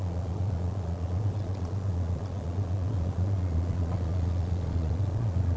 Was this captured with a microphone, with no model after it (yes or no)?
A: no